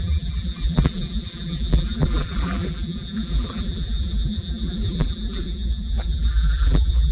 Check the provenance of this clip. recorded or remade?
remade